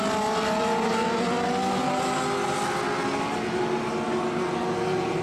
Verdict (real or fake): real